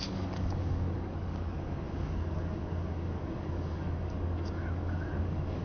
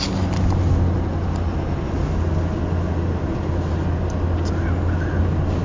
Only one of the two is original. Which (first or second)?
second